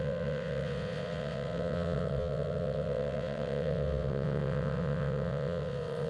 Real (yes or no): no